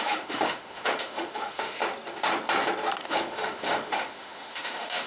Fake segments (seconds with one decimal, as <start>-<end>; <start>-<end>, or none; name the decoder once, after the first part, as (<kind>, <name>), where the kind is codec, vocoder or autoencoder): 0.0-1.8 (autoencoder, DAC-VAE); 3.0-5.1